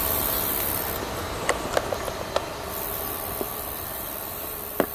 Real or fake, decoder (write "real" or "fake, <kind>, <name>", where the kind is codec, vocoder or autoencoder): fake, vocoder, BigVGAN v2